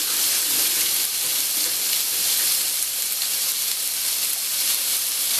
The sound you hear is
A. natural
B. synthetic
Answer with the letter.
A